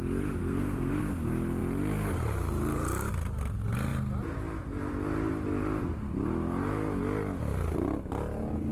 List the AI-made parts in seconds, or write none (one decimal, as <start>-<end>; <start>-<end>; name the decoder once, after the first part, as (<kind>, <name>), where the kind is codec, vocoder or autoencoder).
0.4-1.0 (codec, SNAC)